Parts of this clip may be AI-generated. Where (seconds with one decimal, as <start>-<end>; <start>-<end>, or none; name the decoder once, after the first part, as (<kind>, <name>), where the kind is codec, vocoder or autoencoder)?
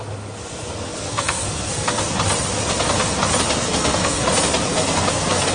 0.9-2.0 (codec, SNAC); 3.7-4.3; 4.7-5.5